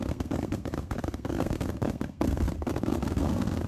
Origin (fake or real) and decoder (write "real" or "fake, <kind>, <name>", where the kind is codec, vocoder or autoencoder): fake, codec, SNAC